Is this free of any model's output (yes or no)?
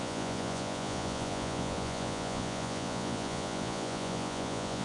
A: no